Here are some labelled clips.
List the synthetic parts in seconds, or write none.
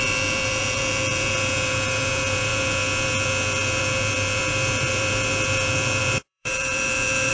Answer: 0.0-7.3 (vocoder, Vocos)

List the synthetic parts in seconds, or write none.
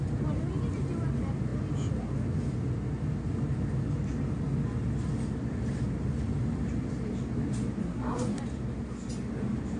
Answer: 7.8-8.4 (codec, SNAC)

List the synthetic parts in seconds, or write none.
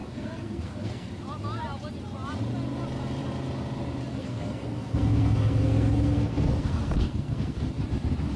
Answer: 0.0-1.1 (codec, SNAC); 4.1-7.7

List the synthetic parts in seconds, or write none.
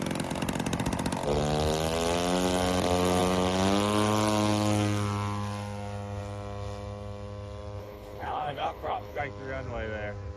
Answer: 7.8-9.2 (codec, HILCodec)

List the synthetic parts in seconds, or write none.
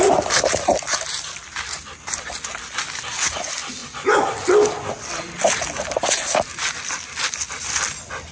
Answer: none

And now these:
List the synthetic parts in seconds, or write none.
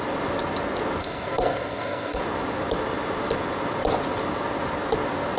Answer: 1.0-2.2 (codec, SNAC)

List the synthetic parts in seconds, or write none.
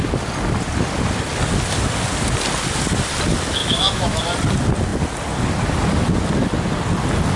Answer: 3.6-4.2 (autoencoder, DAC-VAE)